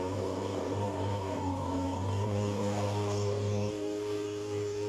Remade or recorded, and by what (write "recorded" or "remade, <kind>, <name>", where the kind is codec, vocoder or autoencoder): remade, codec, DAC